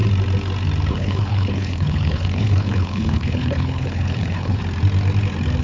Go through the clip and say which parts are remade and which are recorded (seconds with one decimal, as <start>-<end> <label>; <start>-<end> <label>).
0.0-0.9 recorded; 0.9-4.6 remade; 4.6-5.6 recorded